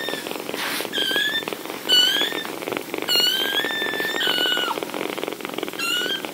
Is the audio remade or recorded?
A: remade